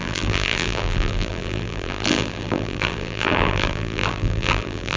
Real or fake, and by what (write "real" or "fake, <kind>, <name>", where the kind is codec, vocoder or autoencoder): fake, vocoder, BigVGAN v2